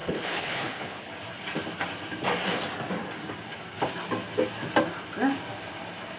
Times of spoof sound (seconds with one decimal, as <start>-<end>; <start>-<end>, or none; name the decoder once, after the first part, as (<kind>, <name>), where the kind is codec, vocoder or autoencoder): 0.0-1.1 (codec, HILCodec)